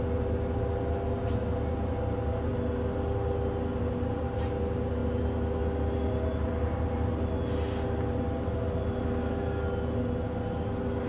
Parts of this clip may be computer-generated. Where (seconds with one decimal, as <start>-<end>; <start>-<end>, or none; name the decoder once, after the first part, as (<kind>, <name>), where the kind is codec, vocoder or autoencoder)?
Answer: none